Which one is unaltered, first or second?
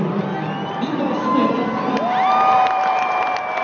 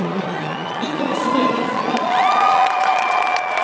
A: first